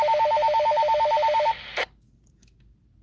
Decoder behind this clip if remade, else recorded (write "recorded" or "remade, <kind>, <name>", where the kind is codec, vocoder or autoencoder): recorded